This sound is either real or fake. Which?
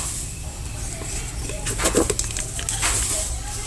real